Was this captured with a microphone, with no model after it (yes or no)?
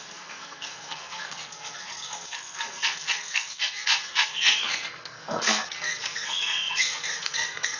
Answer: no